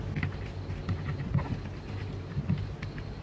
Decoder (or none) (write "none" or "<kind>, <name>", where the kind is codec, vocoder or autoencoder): none